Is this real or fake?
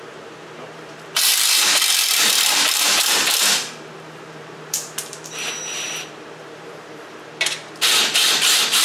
fake